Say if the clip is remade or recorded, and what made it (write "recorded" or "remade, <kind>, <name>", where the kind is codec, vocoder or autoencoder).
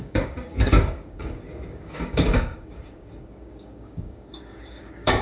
remade, codec, DAC